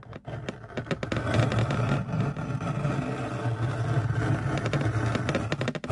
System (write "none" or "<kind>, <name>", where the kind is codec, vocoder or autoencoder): none